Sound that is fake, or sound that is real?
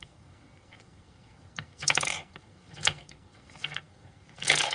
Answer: fake